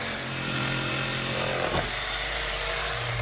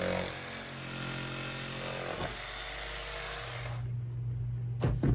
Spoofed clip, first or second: first